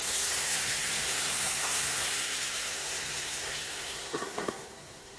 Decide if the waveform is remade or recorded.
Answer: remade